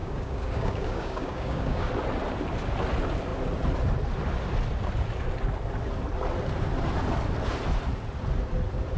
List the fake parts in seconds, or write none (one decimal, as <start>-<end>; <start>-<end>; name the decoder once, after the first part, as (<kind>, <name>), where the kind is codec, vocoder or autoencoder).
0.0-1.9 (codec, DAC)